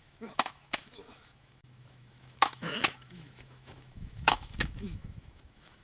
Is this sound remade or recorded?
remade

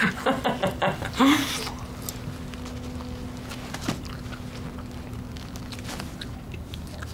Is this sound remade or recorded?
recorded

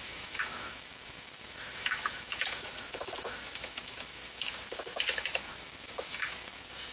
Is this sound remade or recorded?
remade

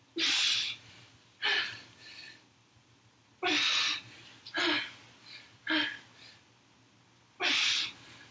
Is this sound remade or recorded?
recorded